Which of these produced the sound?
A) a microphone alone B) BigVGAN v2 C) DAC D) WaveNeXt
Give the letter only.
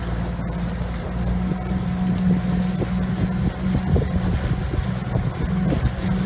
A